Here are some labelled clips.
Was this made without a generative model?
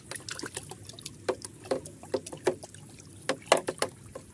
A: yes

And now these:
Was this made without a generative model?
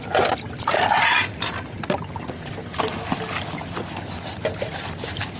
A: yes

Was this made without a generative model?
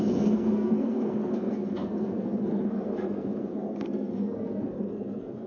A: no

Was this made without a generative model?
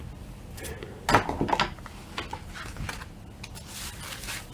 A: yes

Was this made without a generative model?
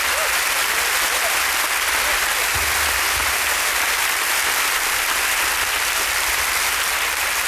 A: yes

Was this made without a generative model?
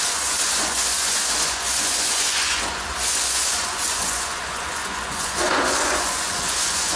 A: no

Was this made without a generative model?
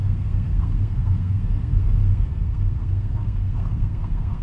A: no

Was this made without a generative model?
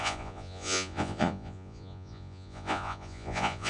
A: no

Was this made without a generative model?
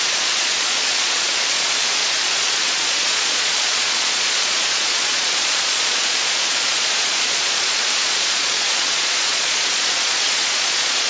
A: no